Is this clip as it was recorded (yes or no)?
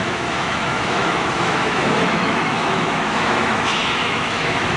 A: no